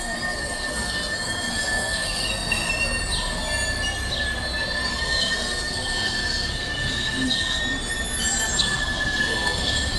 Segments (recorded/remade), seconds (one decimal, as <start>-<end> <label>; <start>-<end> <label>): 0.0-2.7 remade; 2.7-4.9 recorded; 4.9-7.6 remade; 7.6-8.6 recorded; 8.6-10.0 remade